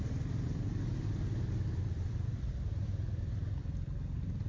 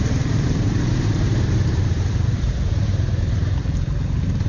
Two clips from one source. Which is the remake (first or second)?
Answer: second